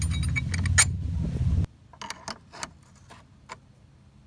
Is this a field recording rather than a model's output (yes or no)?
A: yes